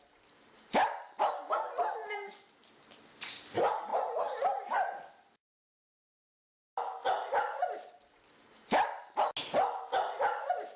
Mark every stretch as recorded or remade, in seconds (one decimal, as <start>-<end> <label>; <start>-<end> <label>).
0.0-10.8 recorded